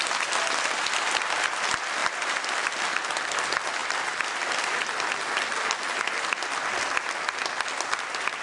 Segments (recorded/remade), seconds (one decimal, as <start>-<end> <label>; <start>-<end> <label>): 0.0-8.4 recorded